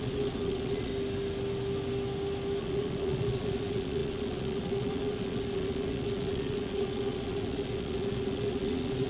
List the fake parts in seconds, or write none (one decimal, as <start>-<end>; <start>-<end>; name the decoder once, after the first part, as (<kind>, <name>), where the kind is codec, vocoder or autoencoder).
0.0-0.9 (vocoder, Vocos); 2.6-9.1